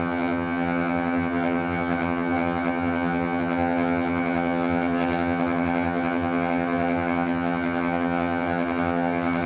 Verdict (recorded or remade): remade